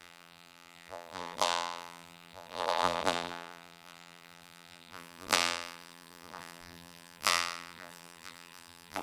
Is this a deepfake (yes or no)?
yes